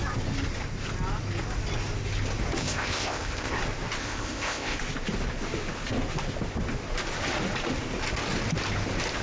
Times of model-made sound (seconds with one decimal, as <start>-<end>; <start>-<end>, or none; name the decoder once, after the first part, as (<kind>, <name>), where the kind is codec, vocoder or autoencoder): 2.6-3.6 (codec, ZipCodec); 4.0-4.8